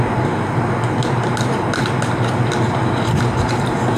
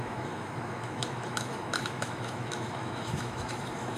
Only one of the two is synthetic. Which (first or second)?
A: second